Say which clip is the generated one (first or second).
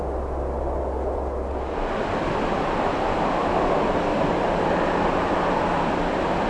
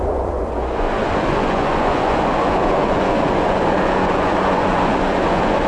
second